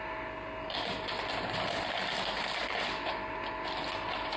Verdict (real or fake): real